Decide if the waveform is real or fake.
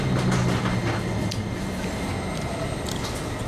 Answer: real